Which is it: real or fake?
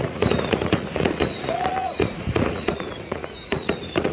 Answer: fake